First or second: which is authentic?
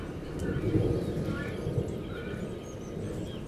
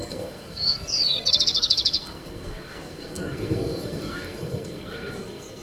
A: first